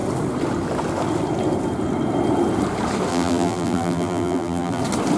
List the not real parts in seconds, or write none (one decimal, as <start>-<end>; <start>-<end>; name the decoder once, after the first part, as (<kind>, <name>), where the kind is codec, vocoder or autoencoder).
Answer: 3.1-4.8 (vocoder, BigVGAN v2)